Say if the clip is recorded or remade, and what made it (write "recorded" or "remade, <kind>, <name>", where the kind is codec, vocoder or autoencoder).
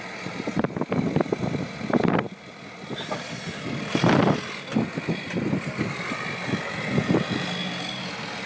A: recorded